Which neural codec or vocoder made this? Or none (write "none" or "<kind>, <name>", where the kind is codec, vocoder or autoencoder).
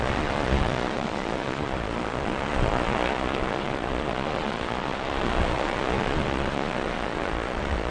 vocoder, Vocos